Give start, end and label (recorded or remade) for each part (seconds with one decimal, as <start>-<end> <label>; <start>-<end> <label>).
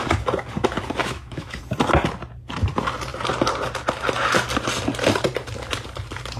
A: 0.0-1.0 recorded; 1.0-1.6 remade; 1.6-6.4 recorded